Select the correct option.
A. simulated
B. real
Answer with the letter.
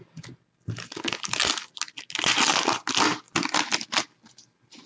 B